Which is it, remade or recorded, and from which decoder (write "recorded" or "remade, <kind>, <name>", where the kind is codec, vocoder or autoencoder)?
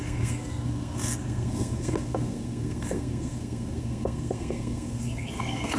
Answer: remade, codec, SNAC